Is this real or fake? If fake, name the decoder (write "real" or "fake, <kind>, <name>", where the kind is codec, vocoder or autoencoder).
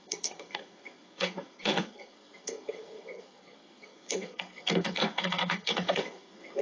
fake, codec, SNAC